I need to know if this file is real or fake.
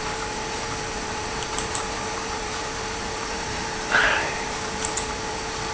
fake